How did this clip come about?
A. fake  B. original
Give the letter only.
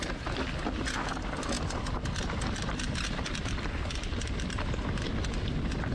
B